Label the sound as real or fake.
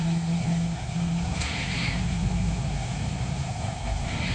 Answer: fake